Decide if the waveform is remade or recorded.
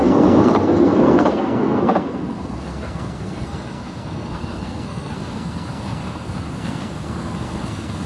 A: remade